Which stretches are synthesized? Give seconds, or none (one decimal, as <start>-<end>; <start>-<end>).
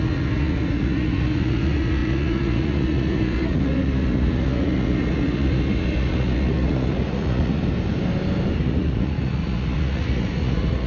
0.0-7.6; 8.6-10.9